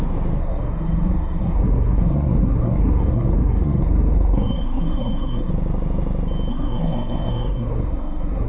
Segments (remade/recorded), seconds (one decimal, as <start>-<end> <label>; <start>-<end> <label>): 0.0-0.4 recorded; 0.4-5.5 remade; 5.5-6.5 recorded; 6.5-8.5 remade